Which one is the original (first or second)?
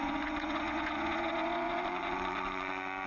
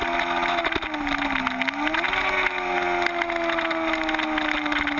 second